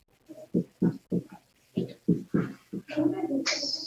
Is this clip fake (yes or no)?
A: no